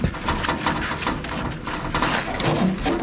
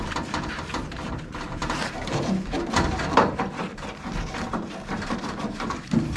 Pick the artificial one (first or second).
second